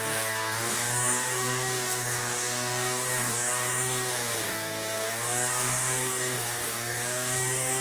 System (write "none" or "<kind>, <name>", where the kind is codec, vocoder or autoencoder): codec, DAC